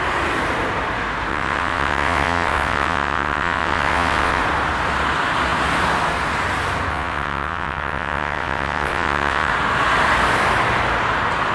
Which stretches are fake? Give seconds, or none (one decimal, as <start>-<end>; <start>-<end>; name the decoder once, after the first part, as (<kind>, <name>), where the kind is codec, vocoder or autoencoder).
1.3-4.4 (vocoder, WaveNeXt); 6.9-9.5